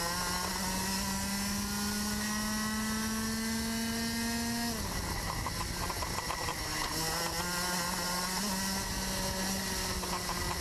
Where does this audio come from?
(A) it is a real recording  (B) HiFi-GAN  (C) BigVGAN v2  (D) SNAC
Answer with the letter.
A